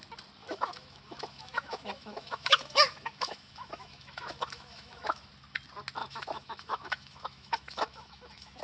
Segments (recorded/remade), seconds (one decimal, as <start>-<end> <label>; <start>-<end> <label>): 0.0-0.4 recorded; 0.4-5.3 remade; 5.3-6.0 recorded; 6.0-8.6 remade